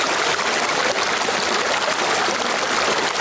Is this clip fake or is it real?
real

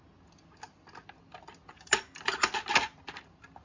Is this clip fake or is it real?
real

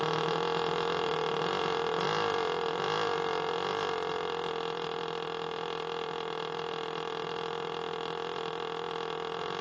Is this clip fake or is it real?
real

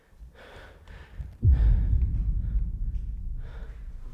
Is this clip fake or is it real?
real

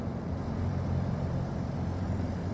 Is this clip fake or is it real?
fake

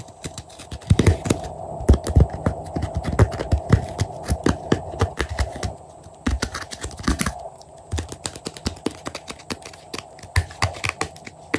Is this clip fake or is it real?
real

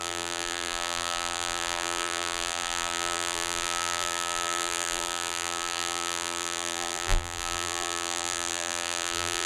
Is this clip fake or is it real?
fake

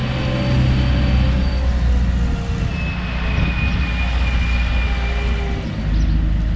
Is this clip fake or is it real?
real